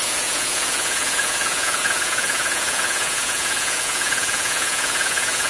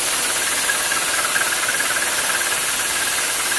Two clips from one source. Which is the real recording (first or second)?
second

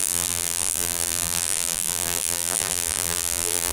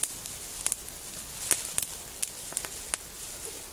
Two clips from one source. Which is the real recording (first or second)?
second